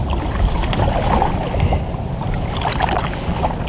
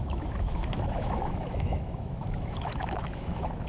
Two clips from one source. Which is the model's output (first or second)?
second